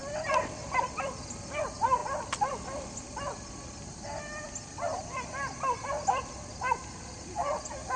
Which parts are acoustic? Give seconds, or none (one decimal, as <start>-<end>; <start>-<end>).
0.0-8.0